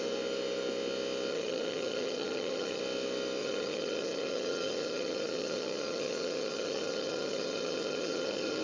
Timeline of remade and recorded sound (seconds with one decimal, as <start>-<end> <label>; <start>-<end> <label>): 0.0-1.3 recorded; 1.3-2.8 remade; 2.8-3.4 recorded; 3.4-8.6 remade